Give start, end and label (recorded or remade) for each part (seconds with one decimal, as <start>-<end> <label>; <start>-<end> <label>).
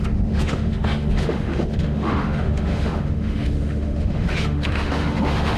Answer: 0.0-5.6 remade